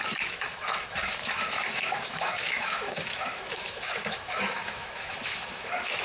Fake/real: fake